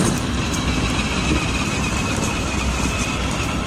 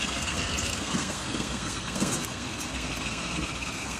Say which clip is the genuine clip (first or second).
first